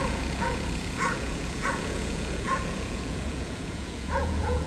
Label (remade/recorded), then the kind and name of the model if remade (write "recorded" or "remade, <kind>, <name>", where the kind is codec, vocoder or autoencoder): remade, vocoder, Vocos